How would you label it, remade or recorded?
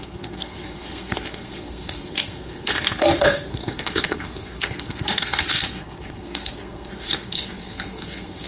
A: remade